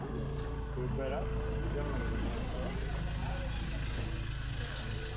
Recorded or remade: recorded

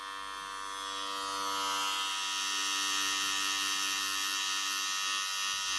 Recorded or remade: recorded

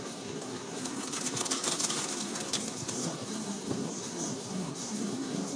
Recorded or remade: remade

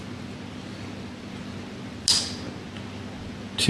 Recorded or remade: recorded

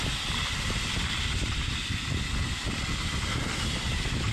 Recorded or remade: recorded